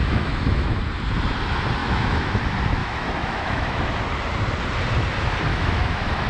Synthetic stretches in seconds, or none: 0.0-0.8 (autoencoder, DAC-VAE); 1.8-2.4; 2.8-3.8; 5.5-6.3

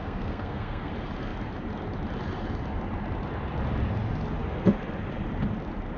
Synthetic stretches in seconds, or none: 0.0-0.9 (codec, SNAC)

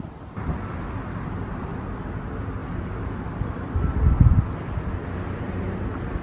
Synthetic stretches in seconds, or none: none

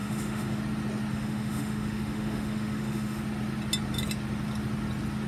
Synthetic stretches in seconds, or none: 0.0-0.6 (autoencoder, DAC-VAE); 1.1-3.2

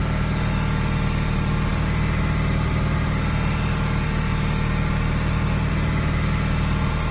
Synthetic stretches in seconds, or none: none

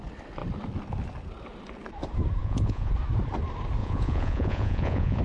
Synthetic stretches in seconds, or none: 2.4-2.9 (vocoder, Vocos); 3.8-5.2

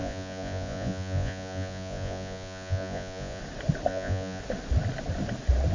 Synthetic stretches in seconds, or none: 0.0-3.4 (vocoder, Vocos); 3.9-4.4

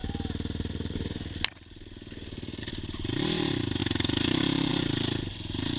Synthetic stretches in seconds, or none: 2.6-5.8 (vocoder, BigVGAN v2)